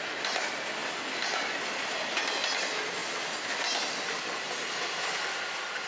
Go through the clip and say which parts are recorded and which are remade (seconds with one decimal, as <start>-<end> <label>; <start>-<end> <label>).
0.0-5.9 recorded